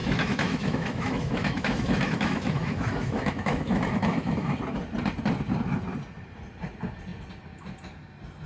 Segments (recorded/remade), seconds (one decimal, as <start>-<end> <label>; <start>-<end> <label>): 0.0-4.6 remade; 4.6-8.5 recorded